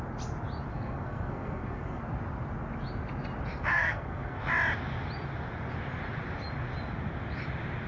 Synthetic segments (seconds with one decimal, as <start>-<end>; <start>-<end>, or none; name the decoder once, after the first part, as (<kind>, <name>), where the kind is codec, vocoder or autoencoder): 0.7-2.0 (codec, SNAC); 3.7-4.4